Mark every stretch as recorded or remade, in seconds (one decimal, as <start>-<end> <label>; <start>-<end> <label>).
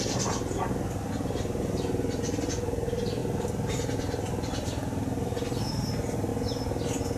0.0-7.2 recorded